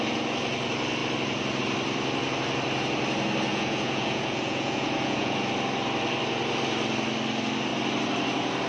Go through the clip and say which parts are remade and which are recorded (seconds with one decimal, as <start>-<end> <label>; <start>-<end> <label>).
0.0-3.5 recorded; 3.5-5.5 remade; 5.5-8.7 recorded